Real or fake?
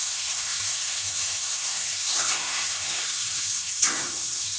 fake